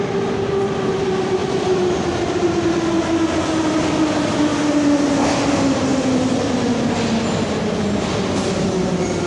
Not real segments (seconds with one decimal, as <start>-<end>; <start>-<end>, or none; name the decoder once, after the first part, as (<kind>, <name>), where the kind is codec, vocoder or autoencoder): 1.4-2.7 (vocoder, BigVGAN v2)